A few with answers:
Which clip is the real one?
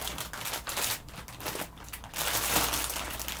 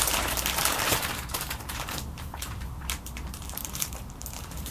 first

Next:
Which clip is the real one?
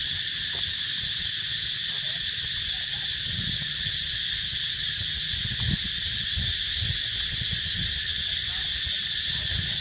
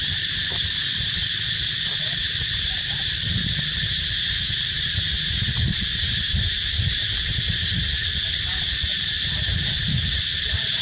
first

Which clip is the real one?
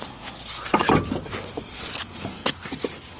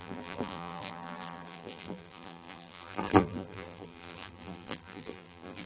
first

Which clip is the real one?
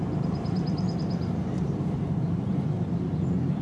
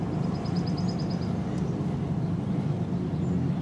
second